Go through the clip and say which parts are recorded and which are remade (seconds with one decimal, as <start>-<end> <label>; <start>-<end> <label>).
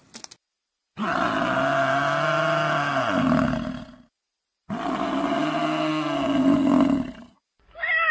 0.0-8.1 recorded